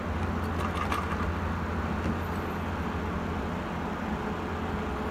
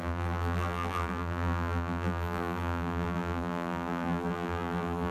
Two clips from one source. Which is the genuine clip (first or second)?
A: first